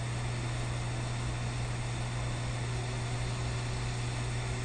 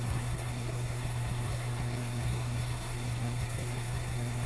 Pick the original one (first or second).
first